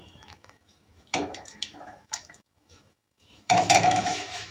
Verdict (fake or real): fake